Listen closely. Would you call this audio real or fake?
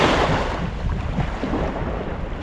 real